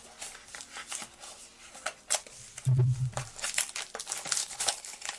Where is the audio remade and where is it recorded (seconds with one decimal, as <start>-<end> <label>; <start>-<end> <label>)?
0.0-4.4 recorded; 4.4-5.2 remade